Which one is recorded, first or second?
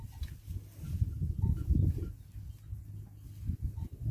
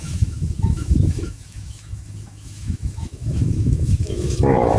first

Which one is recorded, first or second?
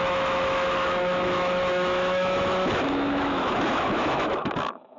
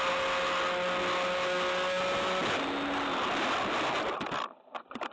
second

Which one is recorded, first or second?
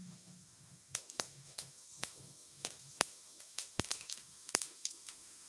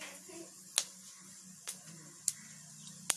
second